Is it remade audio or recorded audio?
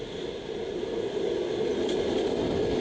recorded